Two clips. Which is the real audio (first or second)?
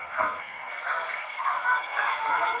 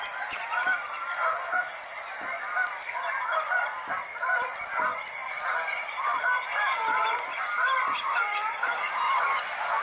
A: second